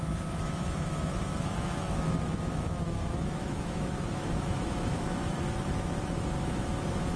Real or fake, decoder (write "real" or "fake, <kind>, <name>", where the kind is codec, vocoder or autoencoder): fake, autoencoder, DAC-VAE